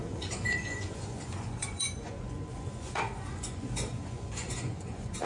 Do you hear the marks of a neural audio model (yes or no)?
yes